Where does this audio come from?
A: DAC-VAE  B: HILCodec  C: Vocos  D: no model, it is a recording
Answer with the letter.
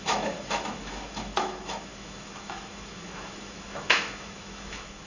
A